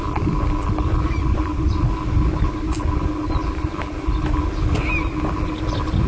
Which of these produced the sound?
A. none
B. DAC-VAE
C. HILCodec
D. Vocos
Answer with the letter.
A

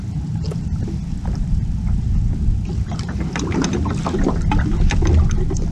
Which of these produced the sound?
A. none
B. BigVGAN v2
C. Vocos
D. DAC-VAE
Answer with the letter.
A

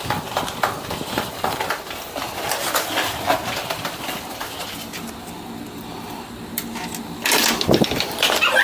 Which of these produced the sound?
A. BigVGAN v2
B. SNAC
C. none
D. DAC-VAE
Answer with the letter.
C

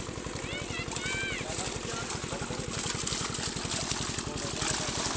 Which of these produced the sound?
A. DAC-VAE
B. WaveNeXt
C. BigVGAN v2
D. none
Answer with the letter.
D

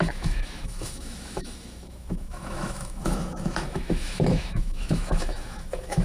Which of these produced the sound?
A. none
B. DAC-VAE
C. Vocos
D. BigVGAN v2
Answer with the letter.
B